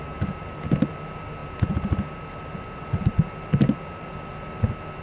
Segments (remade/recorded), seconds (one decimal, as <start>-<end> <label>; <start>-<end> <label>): 0.0-5.0 recorded